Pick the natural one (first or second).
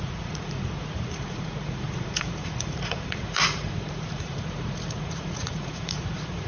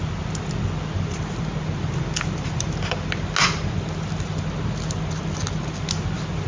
second